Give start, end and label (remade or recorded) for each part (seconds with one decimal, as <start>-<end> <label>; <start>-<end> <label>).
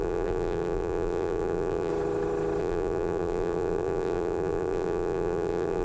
0.0-1.9 remade; 1.9-2.6 recorded; 2.6-5.8 remade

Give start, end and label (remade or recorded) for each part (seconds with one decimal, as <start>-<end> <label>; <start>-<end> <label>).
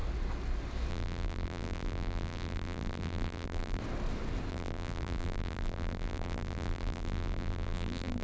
0.0-0.9 recorded; 0.9-3.8 remade; 3.8-4.5 recorded; 4.5-8.2 remade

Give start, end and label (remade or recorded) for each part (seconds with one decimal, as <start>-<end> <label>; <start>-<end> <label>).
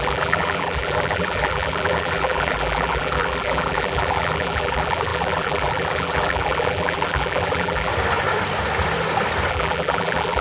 0.0-7.9 remade; 7.9-9.5 recorded; 9.5-10.4 remade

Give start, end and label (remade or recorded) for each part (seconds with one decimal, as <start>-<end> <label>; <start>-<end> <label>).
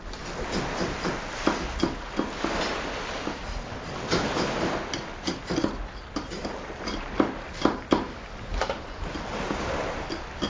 0.0-10.5 recorded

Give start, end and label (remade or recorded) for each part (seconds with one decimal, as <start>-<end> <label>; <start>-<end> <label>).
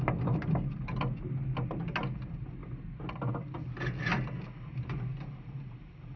0.0-5.1 recorded; 5.1-6.2 remade